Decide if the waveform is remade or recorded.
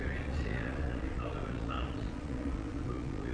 remade